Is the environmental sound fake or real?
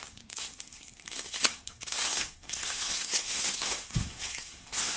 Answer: fake